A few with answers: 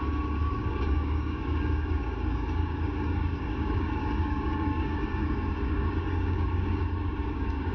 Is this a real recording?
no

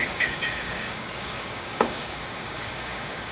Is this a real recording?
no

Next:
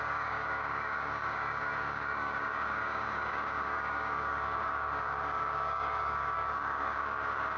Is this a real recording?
no